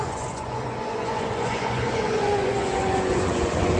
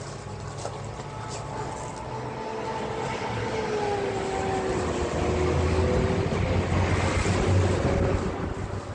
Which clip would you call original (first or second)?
second